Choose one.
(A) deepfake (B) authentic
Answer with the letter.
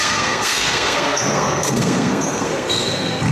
A